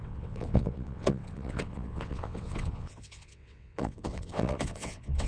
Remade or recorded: remade